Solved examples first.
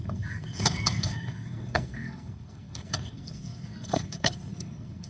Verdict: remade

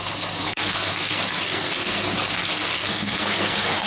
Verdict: remade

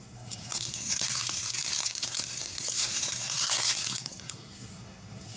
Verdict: remade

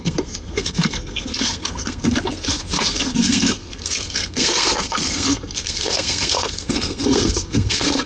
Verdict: remade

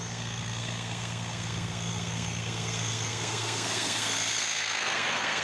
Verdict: remade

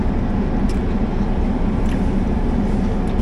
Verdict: recorded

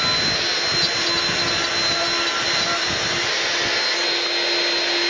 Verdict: recorded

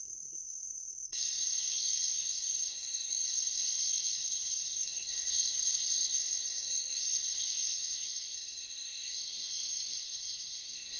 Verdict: remade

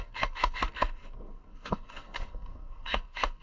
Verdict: remade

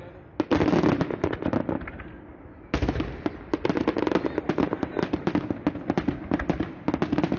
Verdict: recorded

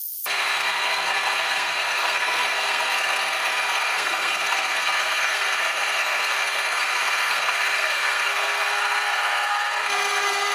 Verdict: remade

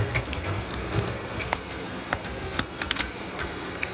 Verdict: remade